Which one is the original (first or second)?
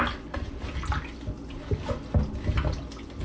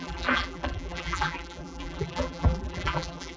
first